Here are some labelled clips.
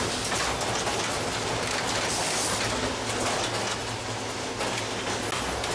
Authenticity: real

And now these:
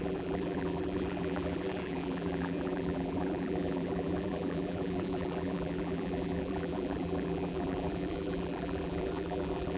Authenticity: fake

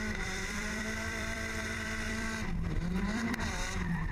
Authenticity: fake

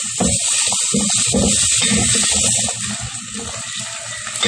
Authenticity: real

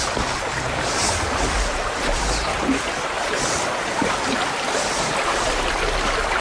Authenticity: fake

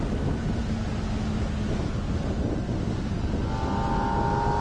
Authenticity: real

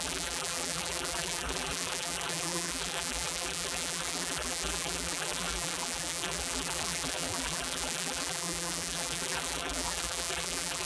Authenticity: fake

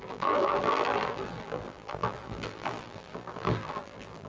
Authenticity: fake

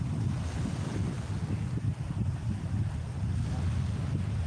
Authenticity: real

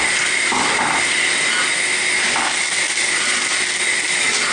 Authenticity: real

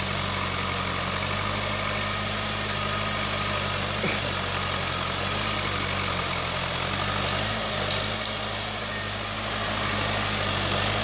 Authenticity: fake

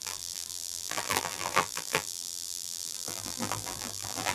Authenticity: fake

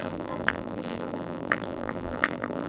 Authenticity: fake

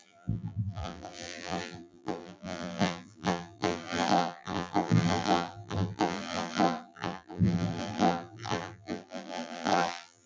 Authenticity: fake